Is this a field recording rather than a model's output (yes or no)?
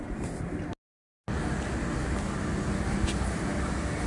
yes